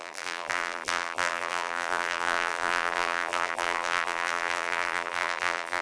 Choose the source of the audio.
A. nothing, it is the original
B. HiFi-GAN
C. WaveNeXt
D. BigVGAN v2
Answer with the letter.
D